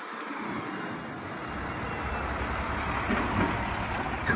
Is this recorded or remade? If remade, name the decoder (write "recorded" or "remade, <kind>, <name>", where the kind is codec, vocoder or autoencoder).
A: recorded